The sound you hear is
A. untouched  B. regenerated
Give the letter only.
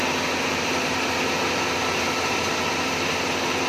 A